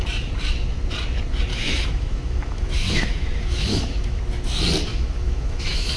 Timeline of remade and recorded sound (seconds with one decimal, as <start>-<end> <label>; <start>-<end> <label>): 0.0-1.5 recorded; 1.5-4.2 remade; 4.2-4.9 recorded; 4.9-6.0 remade